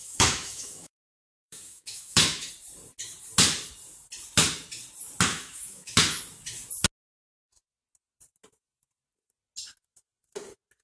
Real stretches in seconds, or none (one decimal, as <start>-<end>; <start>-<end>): 2.5-5.3; 6.2-10.8